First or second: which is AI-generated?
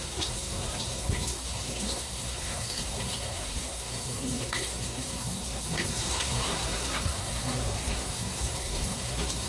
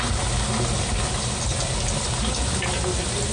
first